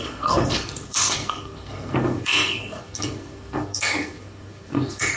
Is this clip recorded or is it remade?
remade